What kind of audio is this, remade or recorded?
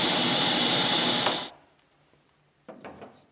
remade